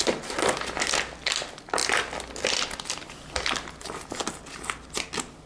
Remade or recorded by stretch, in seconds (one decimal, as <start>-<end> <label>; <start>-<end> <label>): 0.0-5.5 recorded